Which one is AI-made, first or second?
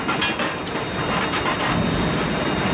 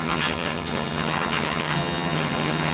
second